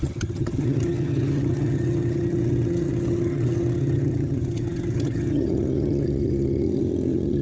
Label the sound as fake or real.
fake